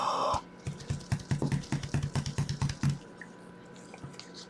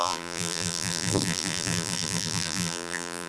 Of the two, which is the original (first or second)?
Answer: first